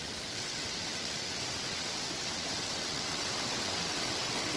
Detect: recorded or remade remade